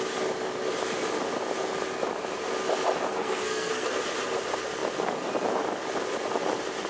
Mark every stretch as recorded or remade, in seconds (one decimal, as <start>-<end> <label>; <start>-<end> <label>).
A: 0.0-3.1 recorded; 3.1-4.0 remade; 4.0-6.9 recorded